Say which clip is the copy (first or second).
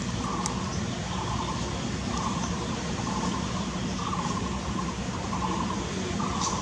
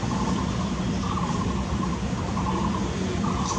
first